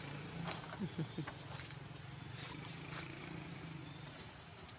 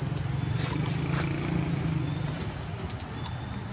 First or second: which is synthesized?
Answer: first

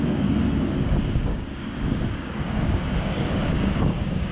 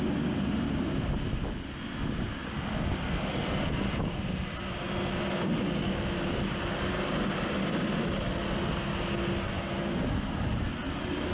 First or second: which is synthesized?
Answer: first